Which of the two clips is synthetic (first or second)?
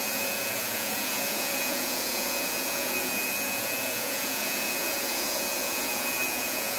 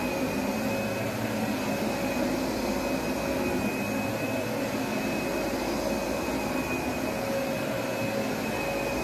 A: first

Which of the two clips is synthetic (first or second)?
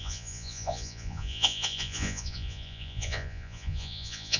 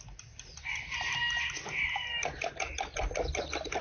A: first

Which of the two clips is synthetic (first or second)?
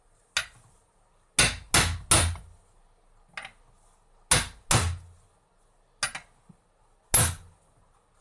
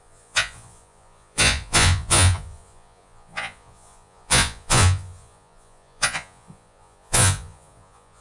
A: second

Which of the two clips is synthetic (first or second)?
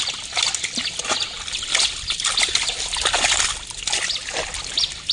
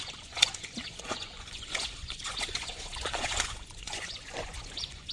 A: second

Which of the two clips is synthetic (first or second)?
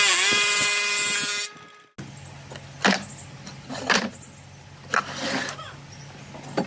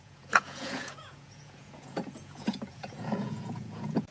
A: second